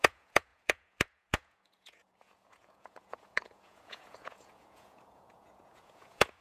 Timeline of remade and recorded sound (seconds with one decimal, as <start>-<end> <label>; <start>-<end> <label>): 0.0-6.4 remade